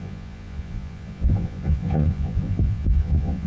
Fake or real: fake